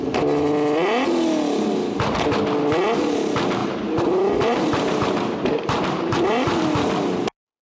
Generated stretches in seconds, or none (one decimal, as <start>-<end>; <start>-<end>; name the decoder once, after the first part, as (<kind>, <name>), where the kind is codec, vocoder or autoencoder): 3.6-6.6 (vocoder, BigVGAN v2)